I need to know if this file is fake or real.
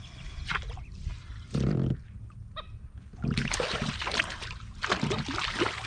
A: real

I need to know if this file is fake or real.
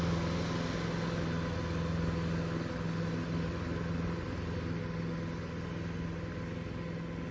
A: real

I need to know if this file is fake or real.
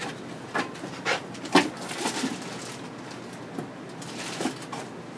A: real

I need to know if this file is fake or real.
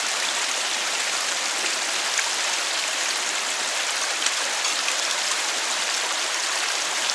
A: real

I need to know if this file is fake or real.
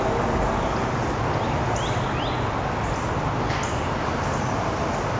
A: real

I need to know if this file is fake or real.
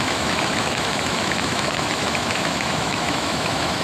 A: fake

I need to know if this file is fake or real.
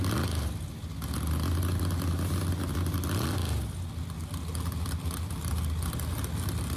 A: real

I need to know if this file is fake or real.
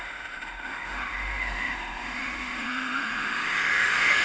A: fake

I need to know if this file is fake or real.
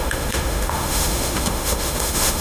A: fake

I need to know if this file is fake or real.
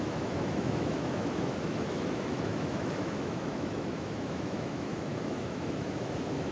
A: fake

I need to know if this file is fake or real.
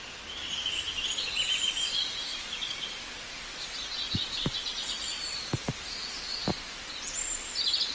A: real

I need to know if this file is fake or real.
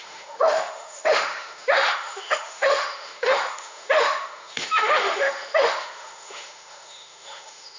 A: fake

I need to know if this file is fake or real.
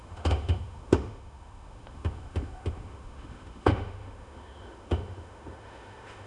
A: fake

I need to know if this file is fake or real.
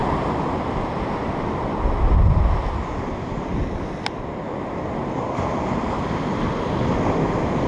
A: real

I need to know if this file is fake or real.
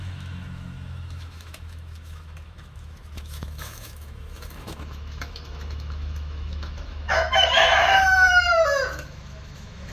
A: fake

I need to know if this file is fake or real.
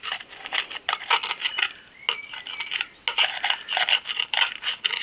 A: real